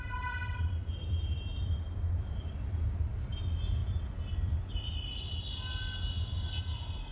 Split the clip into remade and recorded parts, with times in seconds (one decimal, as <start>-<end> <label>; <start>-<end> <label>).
0.0-0.8 recorded; 0.8-2.2 remade; 2.2-7.1 recorded